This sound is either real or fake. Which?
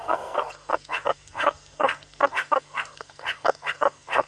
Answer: fake